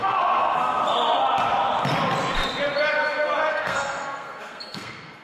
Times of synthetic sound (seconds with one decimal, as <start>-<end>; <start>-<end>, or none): 0.0-0.8; 3.5-5.2